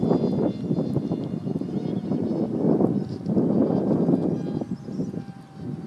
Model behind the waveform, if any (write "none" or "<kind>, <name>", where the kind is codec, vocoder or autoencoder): none